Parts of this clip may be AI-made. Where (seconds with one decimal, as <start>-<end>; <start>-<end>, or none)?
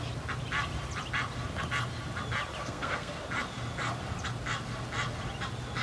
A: 2.6-3.2